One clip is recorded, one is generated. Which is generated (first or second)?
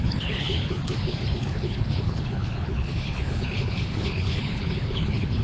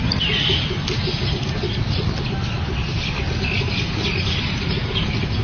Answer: first